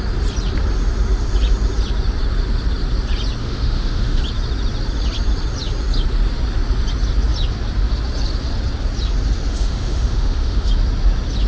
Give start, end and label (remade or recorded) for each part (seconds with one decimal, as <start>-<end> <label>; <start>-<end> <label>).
0.0-3.4 recorded; 3.4-4.2 remade; 4.2-9.5 recorded; 9.5-10.7 remade; 10.7-11.5 recorded